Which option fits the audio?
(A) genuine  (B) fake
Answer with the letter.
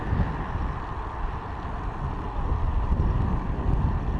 A